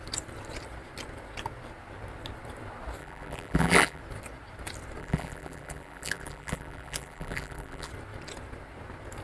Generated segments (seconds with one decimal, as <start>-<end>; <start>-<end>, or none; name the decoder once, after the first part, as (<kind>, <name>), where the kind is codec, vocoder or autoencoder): 3.0-4.0 (vocoder, BigVGAN v2); 5.0-7.9